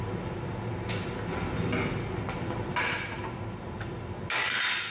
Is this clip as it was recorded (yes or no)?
yes